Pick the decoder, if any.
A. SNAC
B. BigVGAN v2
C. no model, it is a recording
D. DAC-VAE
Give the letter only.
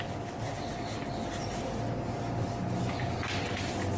C